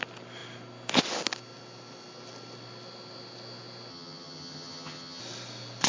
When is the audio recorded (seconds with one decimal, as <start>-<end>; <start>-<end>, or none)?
0.0-3.9; 5.2-5.9